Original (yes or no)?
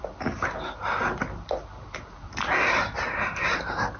yes